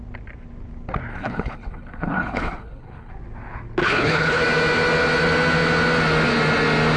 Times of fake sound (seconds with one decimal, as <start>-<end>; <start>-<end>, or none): 1.1-3.1; 3.8-4.4